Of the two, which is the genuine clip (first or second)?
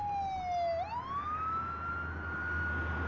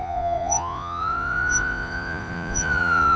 first